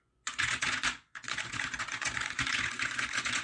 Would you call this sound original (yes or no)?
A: no